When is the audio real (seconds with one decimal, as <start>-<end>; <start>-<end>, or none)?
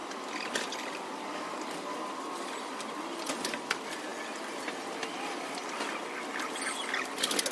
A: 4.1-6.3